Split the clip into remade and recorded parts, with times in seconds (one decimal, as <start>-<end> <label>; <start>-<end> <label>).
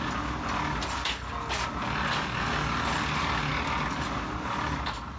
0.0-5.2 recorded